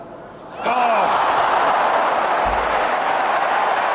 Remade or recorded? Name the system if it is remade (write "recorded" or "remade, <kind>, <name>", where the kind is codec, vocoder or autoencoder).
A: recorded